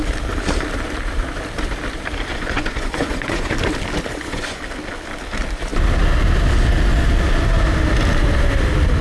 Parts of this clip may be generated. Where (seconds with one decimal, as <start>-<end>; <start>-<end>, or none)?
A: 2.3-3.5; 4.1-4.6